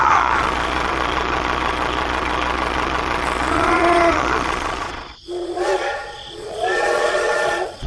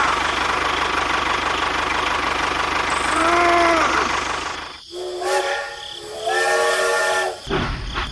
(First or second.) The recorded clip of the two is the second